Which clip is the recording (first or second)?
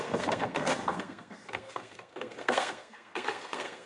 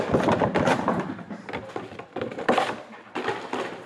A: second